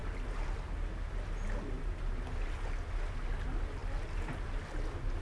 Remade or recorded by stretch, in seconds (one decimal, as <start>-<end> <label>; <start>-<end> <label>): 0.0-5.2 recorded